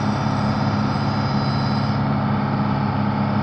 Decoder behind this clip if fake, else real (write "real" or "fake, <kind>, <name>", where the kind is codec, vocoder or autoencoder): real